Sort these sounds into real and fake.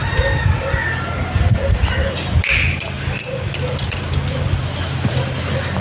real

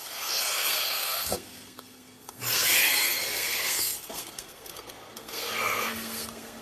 fake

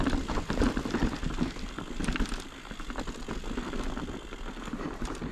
real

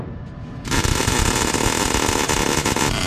real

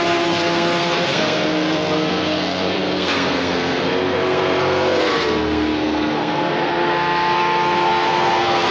fake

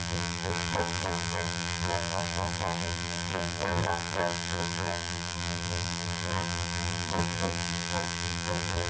fake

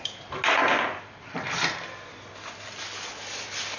real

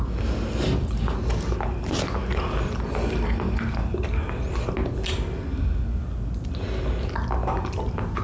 real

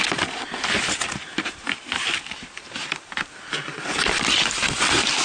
real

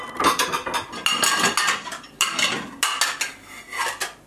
real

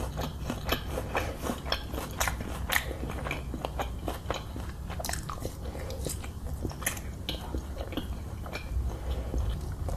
real